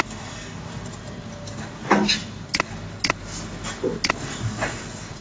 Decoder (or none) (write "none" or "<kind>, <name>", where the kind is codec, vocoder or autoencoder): none